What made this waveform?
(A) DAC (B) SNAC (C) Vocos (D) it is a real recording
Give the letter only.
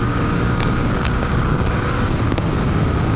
A